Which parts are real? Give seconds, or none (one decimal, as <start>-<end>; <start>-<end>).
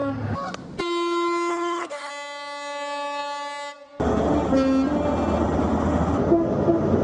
0.0-1.5; 2.1-7.0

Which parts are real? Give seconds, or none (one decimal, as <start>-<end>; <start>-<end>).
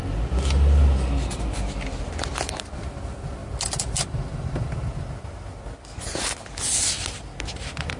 0.0-8.0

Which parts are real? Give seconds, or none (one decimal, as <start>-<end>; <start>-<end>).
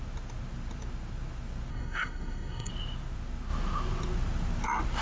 0.0-1.7; 2.7-5.0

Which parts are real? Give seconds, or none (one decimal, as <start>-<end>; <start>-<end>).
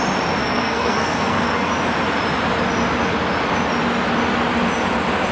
0.0-0.4; 1.7-5.3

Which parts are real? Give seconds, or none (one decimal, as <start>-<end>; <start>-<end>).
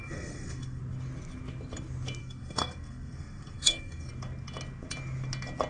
0.8-2.2; 4.1-5.7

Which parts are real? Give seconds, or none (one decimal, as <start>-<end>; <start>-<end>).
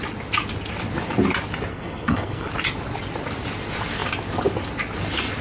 0.0-1.7; 2.5-5.4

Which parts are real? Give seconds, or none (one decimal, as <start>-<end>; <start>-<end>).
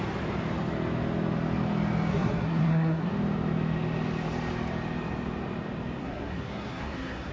0.0-2.1; 3.1-6.0